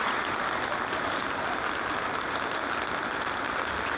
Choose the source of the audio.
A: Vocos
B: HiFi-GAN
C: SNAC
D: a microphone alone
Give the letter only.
D